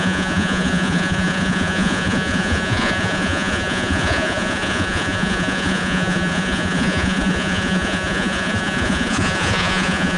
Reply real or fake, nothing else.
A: fake